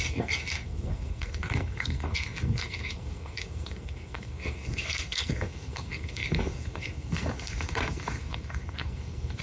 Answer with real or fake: fake